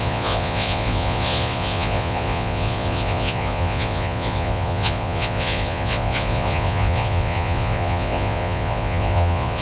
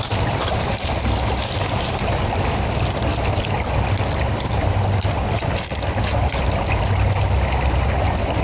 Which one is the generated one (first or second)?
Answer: first